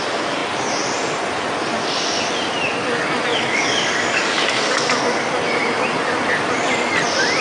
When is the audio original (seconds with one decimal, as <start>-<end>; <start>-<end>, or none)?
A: 0.0-3.3; 5.3-7.4